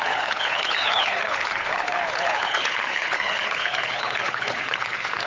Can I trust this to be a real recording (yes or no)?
no